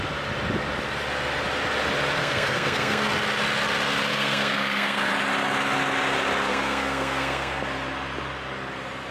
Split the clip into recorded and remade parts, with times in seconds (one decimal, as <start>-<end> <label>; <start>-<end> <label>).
0.0-2.2 recorded; 2.2-3.1 remade; 3.1-4.1 recorded; 4.1-5.1 remade; 5.1-6.5 recorded; 6.5-7.6 remade; 7.6-9.1 recorded